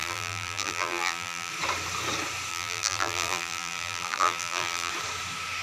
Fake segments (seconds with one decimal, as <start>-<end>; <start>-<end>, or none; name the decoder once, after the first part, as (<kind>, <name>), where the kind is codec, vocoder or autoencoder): 0.0-1.5 (vocoder, BigVGAN v2); 2.5-4.9